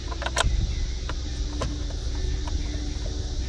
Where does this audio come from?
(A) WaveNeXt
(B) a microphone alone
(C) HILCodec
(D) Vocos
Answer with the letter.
B